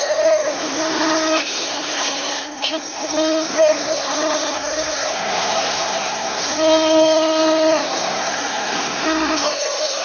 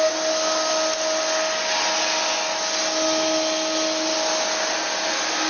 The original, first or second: second